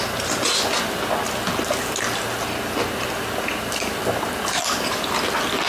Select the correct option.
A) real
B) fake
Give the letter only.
A